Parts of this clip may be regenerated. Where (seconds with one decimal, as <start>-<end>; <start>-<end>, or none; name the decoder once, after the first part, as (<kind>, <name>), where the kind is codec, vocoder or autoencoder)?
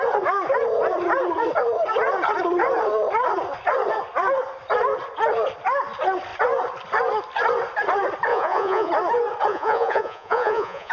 8.3-8.9 (vocoder, Vocos); 9.5-10.9